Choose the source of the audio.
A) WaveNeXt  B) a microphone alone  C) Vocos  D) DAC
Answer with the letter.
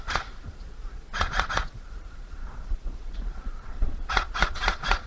C